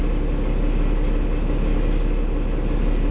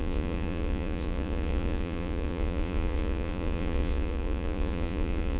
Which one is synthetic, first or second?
second